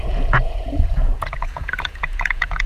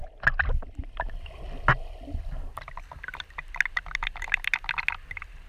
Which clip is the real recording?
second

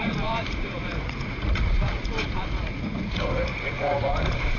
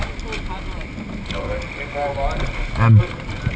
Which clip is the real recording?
second